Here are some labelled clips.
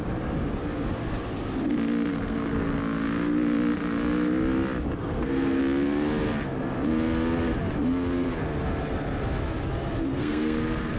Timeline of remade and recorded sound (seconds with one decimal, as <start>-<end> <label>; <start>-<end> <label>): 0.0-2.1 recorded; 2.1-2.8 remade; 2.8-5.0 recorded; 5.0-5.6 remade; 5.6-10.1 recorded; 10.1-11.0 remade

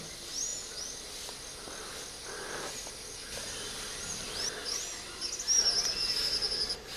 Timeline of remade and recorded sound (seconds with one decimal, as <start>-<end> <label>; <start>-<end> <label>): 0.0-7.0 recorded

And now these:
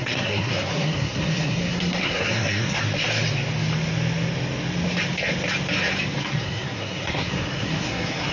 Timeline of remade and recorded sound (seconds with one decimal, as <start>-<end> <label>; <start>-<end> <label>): 0.0-2.8 remade; 2.8-6.2 recorded; 6.2-8.3 remade

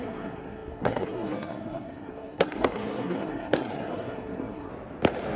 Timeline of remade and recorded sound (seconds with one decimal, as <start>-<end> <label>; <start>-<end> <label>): 0.0-4.7 remade; 4.7-5.4 recorded

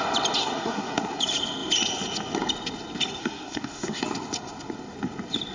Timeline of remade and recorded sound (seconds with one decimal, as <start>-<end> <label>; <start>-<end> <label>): 0.0-0.4 recorded; 0.4-1.2 remade; 1.2-3.2 recorded; 3.2-4.0 remade; 4.0-5.5 recorded